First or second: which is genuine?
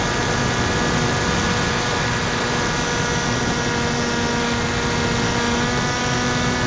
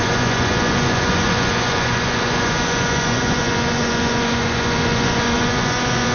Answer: first